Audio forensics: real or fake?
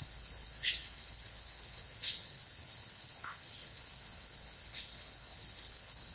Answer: fake